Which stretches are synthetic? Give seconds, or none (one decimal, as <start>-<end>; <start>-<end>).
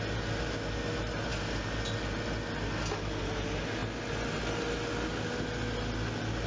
none